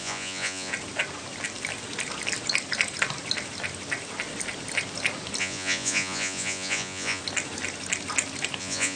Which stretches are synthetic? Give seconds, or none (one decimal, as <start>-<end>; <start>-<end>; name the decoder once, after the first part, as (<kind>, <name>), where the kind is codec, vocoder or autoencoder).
0.0-0.7 (vocoder, Vocos); 5.4-7.2; 8.6-9.0